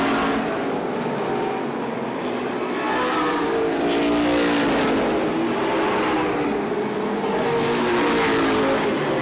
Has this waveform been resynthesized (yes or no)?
no